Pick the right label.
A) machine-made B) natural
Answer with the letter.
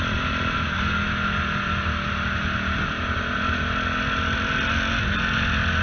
B